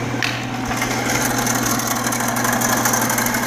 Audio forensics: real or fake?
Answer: real